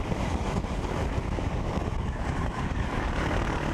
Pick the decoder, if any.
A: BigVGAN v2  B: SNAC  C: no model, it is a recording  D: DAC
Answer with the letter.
D